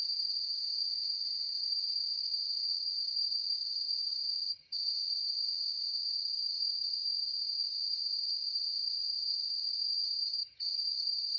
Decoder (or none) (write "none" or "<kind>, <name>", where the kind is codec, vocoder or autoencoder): vocoder, HiFi-GAN